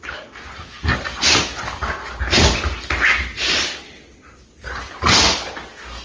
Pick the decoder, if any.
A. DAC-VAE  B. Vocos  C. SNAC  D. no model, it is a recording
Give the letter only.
D